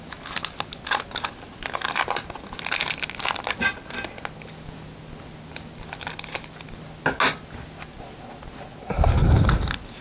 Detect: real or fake real